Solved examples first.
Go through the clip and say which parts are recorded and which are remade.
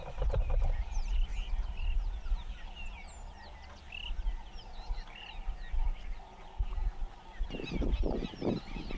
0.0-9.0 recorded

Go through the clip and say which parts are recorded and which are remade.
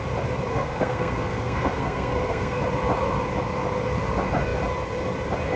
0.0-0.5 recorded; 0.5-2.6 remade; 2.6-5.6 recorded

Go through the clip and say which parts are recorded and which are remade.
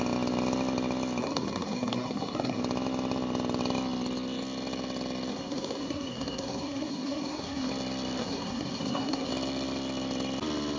0.0-1.2 recorded; 1.2-2.6 remade; 2.6-5.3 recorded; 5.3-7.7 remade; 7.7-8.2 recorded; 8.2-9.3 remade; 9.3-10.8 recorded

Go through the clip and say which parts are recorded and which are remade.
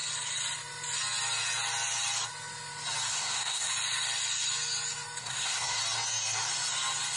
0.0-3.1 recorded; 3.1-3.7 remade; 3.7-5.2 recorded; 5.2-5.8 remade; 5.8-7.2 recorded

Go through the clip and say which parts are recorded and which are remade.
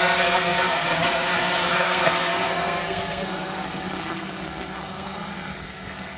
0.0-6.2 remade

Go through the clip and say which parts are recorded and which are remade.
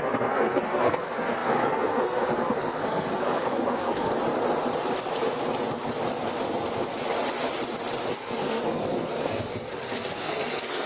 0.0-4.1 remade; 4.1-8.1 recorded; 8.1-10.9 remade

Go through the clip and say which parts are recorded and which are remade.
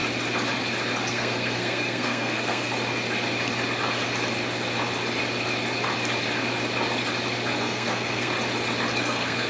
0.0-1.1 recorded; 1.1-2.7 remade; 2.7-7.6 recorded; 7.6-8.3 remade; 8.3-9.0 recorded; 9.0-9.5 remade